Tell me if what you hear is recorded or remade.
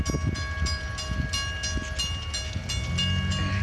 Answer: recorded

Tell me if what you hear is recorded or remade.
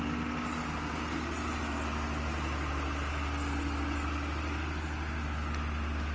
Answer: recorded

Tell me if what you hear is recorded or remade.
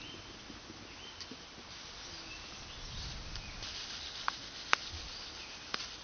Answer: recorded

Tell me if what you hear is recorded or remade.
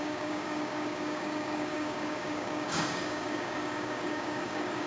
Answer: remade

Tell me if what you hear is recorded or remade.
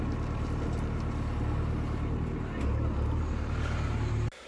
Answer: recorded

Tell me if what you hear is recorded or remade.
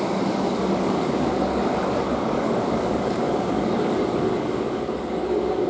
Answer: remade